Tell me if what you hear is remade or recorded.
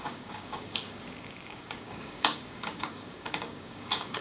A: remade